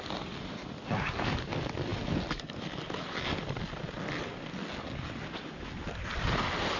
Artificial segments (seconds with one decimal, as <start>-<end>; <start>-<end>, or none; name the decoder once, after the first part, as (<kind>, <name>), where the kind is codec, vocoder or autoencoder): none